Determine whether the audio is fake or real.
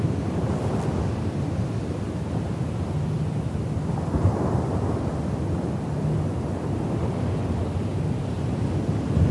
real